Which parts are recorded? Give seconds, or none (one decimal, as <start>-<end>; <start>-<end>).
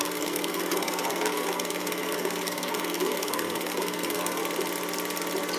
4.4-5.6